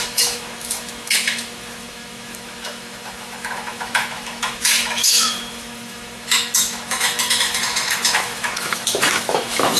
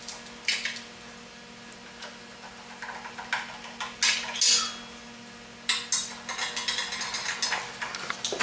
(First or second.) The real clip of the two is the second